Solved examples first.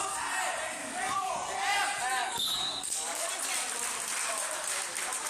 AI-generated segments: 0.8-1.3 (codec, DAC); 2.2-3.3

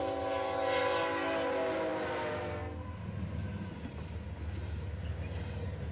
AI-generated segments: none

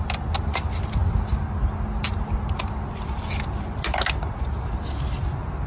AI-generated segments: none

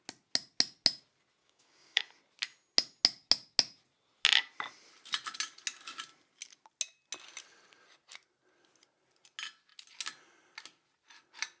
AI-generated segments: 1.4-2.0 (codec, DAC)

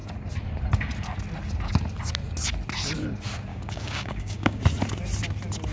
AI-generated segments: 3.5-4.6 (codec, DAC)

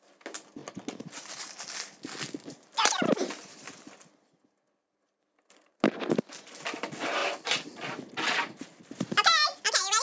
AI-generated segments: none

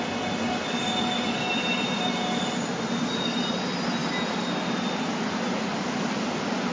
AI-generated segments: none

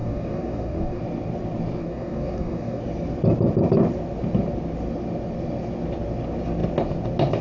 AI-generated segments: 0.0-1.0 (codec, DAC); 1.8-2.8